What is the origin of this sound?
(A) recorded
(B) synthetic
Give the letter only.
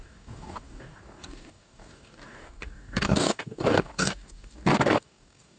B